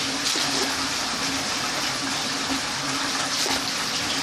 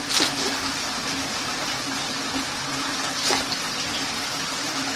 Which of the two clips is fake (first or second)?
first